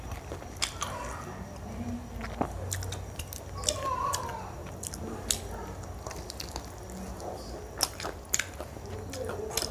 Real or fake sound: real